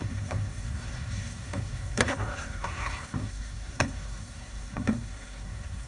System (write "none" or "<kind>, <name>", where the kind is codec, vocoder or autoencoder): codec, SNAC